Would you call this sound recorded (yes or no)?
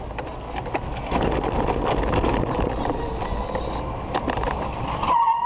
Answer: yes